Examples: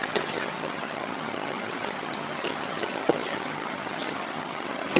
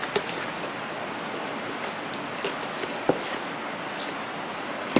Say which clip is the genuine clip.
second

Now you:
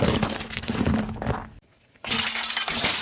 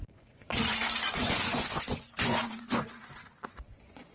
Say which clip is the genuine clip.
first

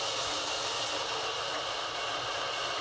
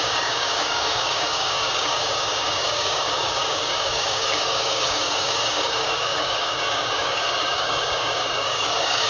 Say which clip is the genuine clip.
first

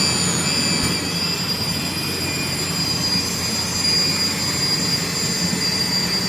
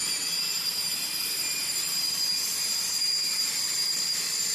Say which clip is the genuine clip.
first